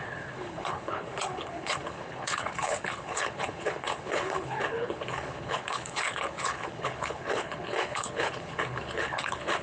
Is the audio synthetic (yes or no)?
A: yes